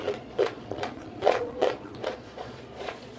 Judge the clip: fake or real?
fake